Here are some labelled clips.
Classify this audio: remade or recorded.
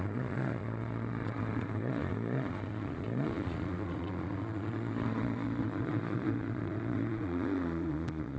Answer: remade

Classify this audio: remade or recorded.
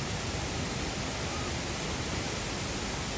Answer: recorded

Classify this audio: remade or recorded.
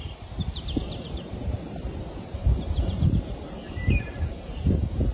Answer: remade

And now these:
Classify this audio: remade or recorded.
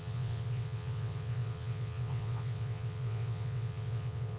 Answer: remade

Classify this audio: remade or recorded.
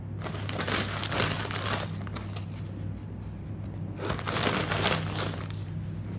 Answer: recorded